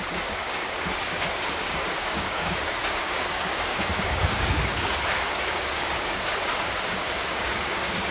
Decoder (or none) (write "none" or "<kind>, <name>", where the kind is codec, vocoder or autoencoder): codec, DAC